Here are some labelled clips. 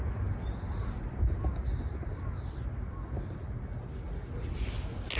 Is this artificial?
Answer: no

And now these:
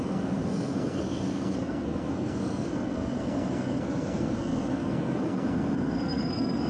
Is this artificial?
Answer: yes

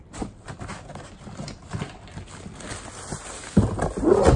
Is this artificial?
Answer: no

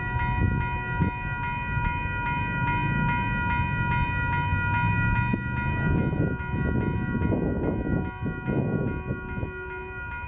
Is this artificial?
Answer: no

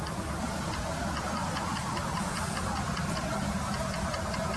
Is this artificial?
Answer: no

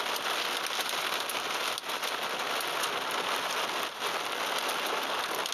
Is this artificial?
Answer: no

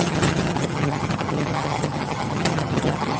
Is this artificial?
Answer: yes